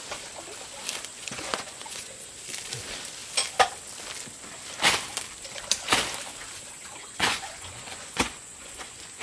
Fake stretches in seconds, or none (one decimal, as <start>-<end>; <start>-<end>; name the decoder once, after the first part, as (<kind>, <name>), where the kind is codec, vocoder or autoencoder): 1.1-2.3 (vocoder, Vocos); 7.0-9.2